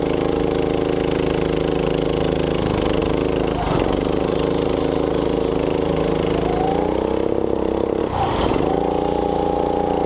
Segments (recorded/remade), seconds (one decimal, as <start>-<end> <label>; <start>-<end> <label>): 0.0-10.1 recorded